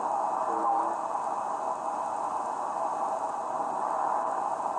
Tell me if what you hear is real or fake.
real